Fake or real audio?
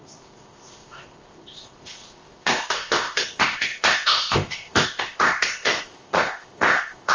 fake